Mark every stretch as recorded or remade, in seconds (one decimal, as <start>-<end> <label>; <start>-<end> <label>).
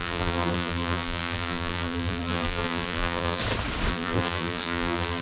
0.0-3.4 remade; 3.4-3.9 recorded; 3.9-5.2 remade